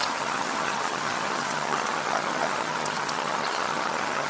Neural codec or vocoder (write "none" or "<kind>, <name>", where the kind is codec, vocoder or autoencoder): vocoder, HiFi-GAN